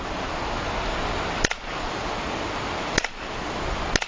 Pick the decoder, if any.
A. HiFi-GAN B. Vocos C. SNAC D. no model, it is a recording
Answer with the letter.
D